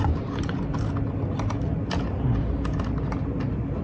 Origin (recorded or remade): recorded